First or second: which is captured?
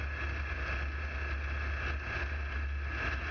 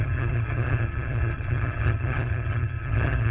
first